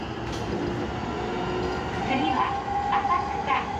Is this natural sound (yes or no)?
yes